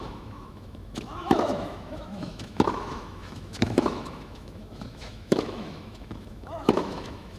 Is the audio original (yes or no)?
no